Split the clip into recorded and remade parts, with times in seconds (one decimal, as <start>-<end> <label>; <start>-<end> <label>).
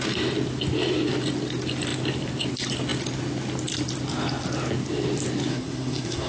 0.0-5.5 recorded; 5.5-6.3 remade